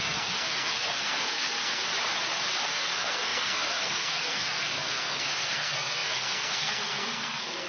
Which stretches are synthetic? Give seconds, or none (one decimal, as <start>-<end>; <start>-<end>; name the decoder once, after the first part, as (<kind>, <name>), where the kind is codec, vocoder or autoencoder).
0.0-1.9 (codec, SNAC); 2.6-7.7

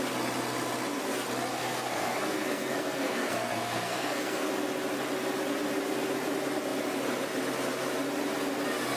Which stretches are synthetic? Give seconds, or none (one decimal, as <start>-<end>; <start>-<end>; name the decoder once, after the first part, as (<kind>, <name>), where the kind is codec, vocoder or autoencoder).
1.5-4.5 (codec, SNAC)